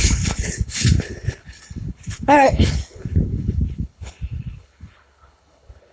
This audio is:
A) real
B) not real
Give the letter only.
B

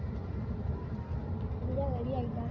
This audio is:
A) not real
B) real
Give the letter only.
B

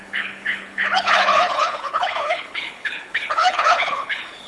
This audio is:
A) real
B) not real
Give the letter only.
B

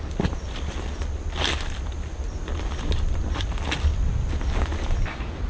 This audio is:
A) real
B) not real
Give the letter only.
A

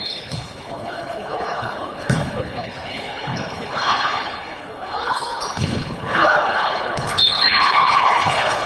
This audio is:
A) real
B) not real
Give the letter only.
B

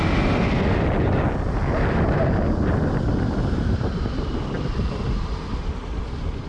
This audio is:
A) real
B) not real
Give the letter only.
A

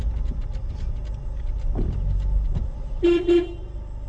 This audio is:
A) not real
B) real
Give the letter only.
B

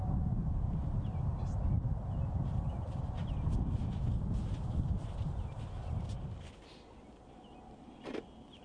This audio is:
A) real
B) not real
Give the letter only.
A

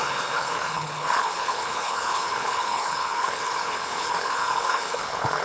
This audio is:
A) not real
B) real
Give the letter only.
A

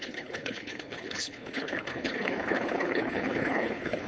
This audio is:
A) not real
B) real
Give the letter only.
A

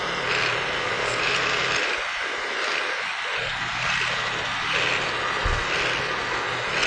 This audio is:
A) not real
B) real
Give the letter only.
B